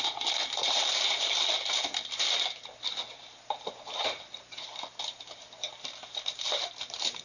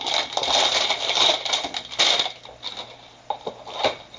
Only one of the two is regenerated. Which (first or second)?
first